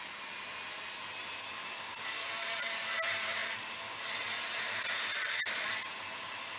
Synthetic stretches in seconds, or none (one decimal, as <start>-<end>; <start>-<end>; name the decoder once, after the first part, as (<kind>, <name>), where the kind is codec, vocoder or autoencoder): none

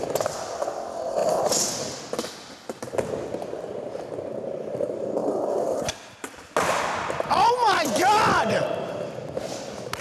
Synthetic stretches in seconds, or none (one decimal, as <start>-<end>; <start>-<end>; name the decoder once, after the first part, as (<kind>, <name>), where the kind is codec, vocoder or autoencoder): none

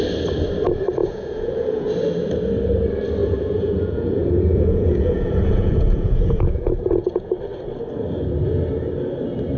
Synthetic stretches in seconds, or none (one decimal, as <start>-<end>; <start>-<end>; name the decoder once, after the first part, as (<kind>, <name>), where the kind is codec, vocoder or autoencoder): 1.0-1.9 (vocoder, Vocos); 3.2-7.3

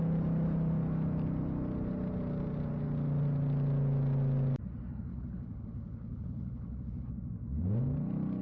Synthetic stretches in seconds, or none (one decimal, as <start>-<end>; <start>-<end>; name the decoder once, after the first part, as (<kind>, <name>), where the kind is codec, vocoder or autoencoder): 5.1-7.1 (codec, HILCodec)